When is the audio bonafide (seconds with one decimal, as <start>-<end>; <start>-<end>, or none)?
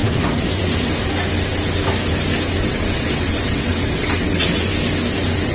0.9-2.6; 4.7-5.5